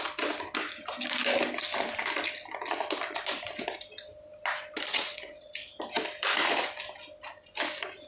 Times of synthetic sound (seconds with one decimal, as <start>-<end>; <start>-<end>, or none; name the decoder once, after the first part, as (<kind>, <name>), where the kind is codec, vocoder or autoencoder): 4.9-5.5 (vocoder, WaveNeXt)